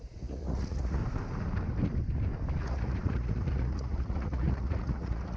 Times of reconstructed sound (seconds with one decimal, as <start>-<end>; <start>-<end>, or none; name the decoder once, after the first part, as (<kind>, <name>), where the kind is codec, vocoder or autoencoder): 0.0-1.0 (vocoder, Vocos); 2.6-5.4